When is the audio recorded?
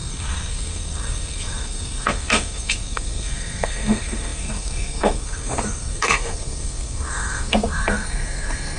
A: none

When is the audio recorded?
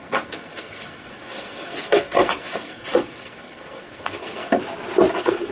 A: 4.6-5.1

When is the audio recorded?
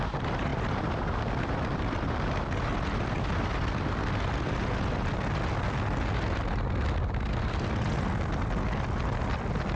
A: 0.0-9.8